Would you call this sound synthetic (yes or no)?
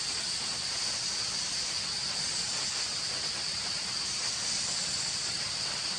no